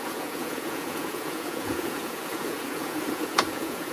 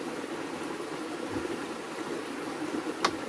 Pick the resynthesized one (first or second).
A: first